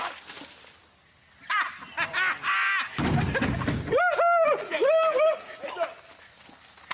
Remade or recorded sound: recorded